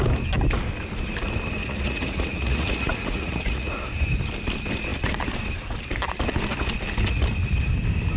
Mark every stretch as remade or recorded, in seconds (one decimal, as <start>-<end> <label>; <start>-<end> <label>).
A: 0.0-1.6 recorded; 1.6-3.7 remade; 3.7-8.2 recorded